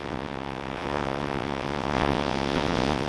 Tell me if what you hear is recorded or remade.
remade